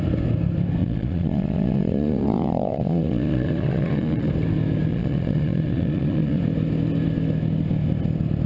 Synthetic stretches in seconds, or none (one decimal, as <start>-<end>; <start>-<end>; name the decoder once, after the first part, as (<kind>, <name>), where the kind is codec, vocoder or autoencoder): 0.8-4.3 (vocoder, Vocos); 4.9-6.4